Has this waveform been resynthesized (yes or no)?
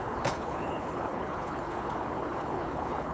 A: yes